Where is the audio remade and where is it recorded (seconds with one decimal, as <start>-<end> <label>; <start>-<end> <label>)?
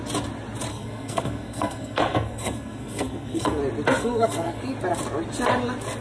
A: 0.0-0.7 recorded; 0.7-3.6 remade; 3.6-4.0 recorded; 4.0-4.6 remade; 4.6-6.0 recorded